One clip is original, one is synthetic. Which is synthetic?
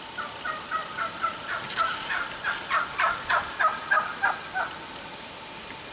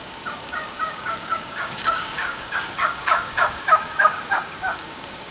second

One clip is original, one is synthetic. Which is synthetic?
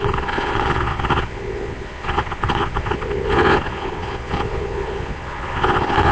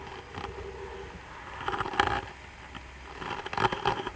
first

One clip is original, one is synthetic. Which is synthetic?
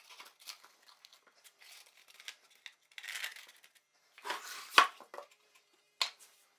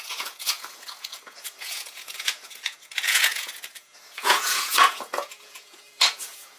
second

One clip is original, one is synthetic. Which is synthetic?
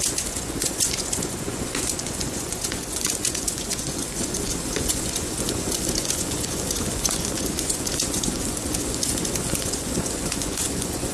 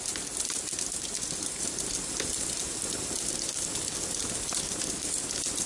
first